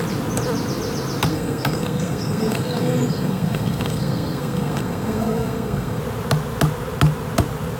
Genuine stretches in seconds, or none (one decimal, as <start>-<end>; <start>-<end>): 0.0-1.3; 6.0-7.8